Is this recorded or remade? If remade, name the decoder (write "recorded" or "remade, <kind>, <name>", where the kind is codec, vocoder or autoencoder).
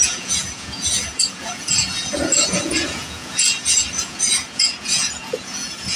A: remade, vocoder, Vocos